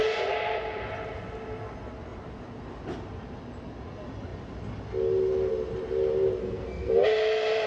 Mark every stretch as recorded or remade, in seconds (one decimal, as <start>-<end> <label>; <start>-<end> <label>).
0.0-6.4 recorded; 6.4-7.0 remade; 7.0-7.7 recorded